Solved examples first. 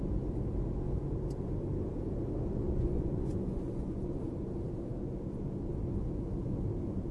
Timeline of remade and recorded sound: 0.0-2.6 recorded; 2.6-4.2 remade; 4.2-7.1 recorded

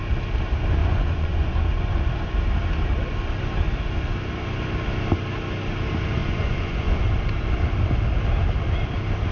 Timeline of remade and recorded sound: 0.0-0.8 recorded; 0.8-2.0 remade; 2.0-6.2 recorded; 6.2-7.0 remade; 7.0-9.3 recorded

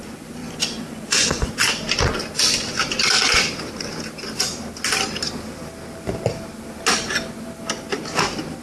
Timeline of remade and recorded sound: 0.0-0.4 recorded; 0.4-1.7 remade; 1.7-8.6 recorded

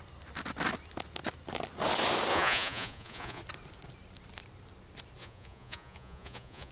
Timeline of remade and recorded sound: 0.0-2.3 recorded; 2.3-3.4 remade; 3.4-5.2 recorded; 5.2-6.7 remade

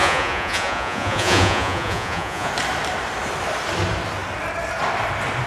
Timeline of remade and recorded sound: 0.0-2.5 remade; 2.5-5.5 recorded